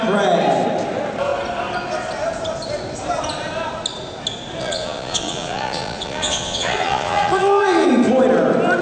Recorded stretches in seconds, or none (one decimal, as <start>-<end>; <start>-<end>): 0.0-4.6; 7.9-8.8